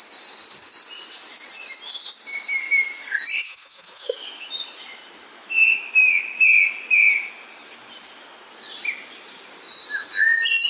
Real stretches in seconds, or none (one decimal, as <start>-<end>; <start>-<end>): 0.0-3.4; 4.5-5.3; 6.1-10.7

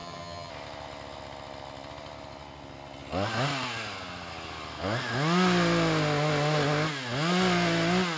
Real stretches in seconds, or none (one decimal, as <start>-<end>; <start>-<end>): 0.5-8.2